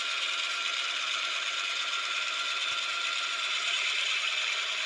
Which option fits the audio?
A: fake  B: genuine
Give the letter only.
A